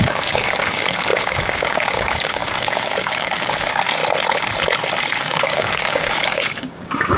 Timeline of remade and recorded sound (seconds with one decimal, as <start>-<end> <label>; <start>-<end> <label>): 0.0-4.0 remade; 4.0-5.2 recorded; 5.2-7.2 remade